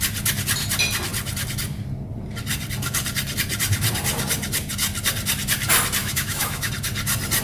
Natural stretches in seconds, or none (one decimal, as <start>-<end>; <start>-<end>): 0.0-6.0; 6.7-7.4